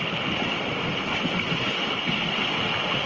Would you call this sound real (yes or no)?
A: yes